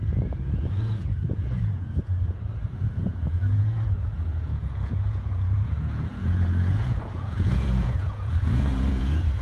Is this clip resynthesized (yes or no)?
yes